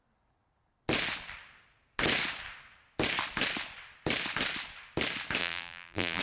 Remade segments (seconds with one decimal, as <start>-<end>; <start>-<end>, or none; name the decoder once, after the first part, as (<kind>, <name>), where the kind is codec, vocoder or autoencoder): 5.4-6.2 (vocoder, BigVGAN v2)